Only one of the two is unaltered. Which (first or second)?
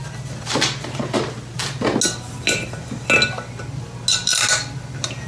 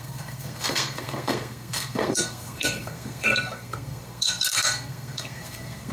first